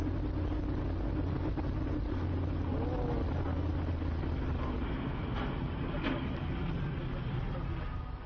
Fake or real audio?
real